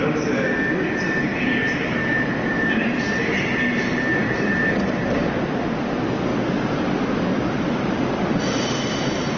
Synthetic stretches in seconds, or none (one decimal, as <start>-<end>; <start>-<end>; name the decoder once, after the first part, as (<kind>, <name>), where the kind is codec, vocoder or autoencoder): 1.3-5.6 (vocoder, BigVGAN v2); 6.3-6.8; 7.3-8.4